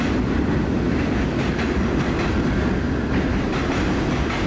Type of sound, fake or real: real